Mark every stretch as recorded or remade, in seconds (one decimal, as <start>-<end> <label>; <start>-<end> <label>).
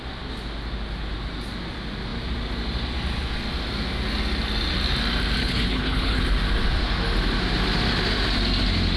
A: 0.0-5.4 recorded; 5.4-6.2 remade; 6.2-9.0 recorded